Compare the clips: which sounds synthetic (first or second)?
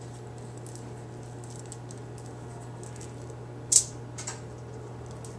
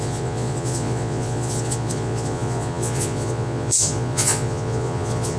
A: second